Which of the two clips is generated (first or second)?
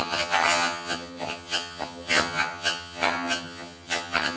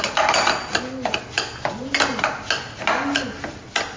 first